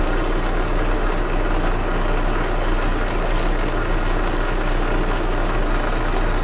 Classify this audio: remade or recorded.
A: recorded